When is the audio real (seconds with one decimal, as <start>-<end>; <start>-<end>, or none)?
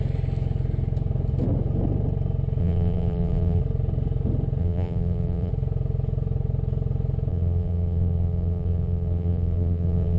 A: 0.0-2.6; 3.6-4.6; 5.5-7.3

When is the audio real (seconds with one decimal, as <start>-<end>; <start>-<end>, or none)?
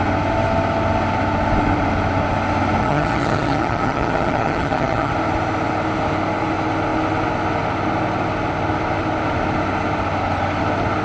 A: 0.0-2.8; 5.1-11.0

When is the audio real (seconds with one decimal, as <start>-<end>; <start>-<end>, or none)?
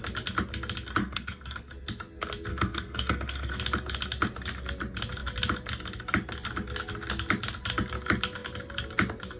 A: 0.0-1.0; 1.7-2.5; 3.6-9.4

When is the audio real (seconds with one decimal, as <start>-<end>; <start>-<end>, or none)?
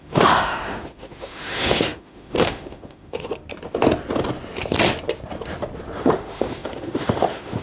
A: 3.3-6.0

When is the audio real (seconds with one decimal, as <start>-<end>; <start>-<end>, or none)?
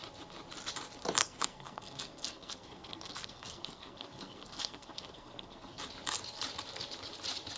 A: 0.0-1.2; 5.8-7.6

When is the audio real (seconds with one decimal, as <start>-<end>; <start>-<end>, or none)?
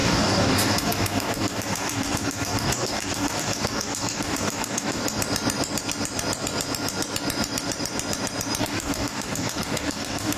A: 5.0-8.6